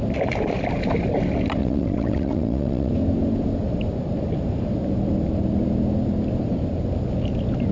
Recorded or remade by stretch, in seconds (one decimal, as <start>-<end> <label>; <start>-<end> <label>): 0.0-1.6 recorded; 1.6-2.9 remade; 2.9-7.7 recorded